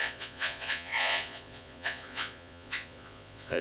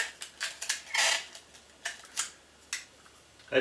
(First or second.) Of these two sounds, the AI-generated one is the first